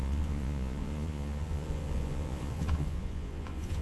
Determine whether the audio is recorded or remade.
remade